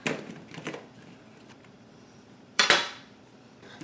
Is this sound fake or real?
fake